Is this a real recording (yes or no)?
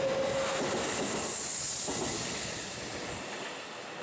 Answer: yes